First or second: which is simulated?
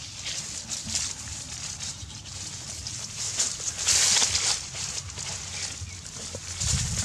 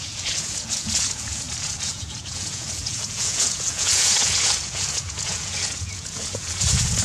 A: second